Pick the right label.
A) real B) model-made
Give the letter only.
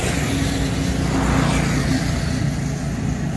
A